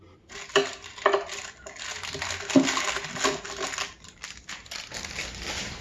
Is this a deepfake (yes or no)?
no